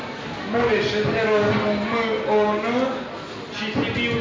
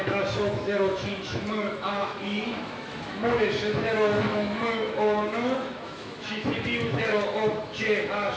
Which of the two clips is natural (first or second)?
first